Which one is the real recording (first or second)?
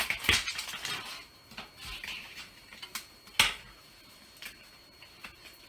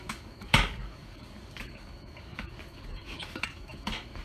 first